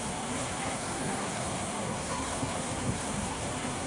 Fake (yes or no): yes